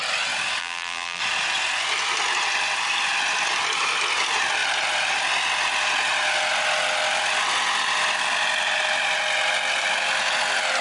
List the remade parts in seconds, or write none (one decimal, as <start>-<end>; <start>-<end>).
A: 0.6-1.2